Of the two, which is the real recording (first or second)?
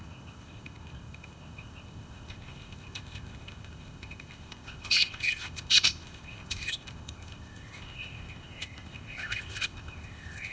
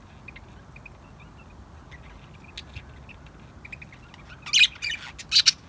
second